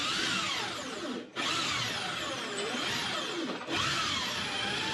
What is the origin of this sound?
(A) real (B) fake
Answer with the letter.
A